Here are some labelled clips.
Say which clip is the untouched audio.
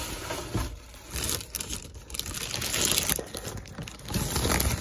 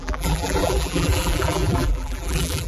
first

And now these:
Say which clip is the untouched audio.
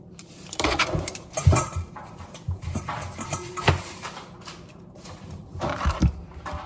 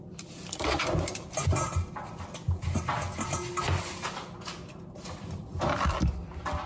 second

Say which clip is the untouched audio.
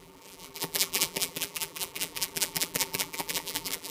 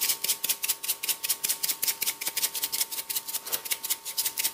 second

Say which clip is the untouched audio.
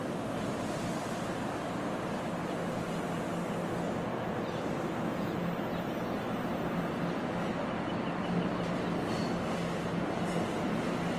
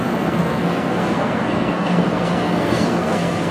first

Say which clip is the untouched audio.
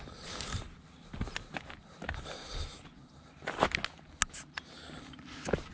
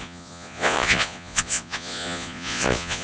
first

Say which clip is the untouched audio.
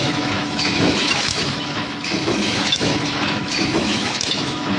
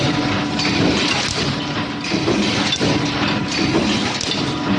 second